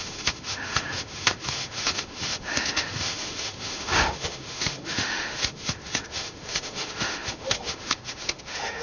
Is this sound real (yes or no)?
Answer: no